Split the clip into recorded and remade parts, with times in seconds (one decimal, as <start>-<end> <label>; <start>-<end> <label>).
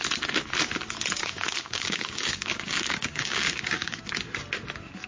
0.0-1.2 recorded; 1.2-4.0 remade; 4.0-5.1 recorded